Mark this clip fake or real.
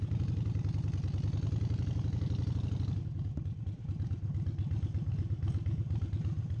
real